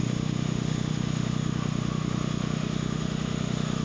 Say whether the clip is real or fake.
fake